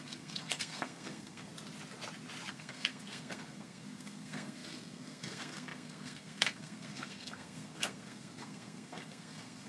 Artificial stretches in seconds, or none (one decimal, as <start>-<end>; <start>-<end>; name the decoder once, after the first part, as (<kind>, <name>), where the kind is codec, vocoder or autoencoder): 0.0-1.5 (codec, SNAC); 2.5-9.7